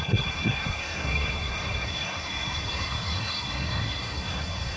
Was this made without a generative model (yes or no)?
no